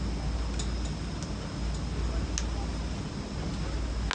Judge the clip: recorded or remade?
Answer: recorded